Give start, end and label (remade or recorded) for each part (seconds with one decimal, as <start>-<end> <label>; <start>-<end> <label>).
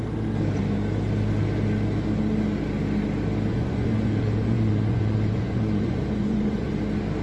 0.0-3.5 recorded; 3.5-6.7 remade; 6.7-7.2 recorded